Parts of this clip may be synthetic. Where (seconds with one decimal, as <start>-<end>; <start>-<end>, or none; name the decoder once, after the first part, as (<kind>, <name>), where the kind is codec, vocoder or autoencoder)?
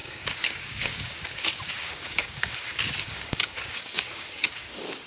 0.0-5.1 (codec, DAC)